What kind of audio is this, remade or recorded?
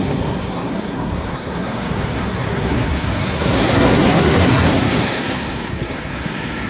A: remade